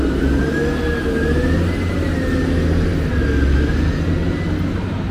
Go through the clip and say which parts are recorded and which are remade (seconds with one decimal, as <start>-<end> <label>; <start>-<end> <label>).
0.0-5.1 recorded